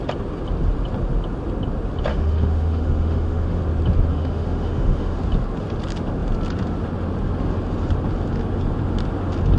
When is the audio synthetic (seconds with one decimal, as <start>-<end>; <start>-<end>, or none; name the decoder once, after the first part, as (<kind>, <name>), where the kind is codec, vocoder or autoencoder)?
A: 2.1-3.6 (autoencoder, DAC-VAE); 4.1-5.2